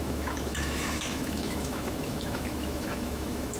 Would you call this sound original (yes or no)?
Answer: no